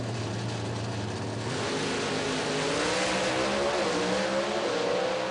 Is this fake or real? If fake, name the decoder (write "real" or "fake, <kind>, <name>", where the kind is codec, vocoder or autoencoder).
real